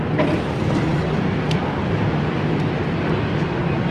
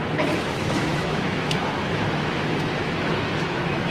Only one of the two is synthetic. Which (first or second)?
second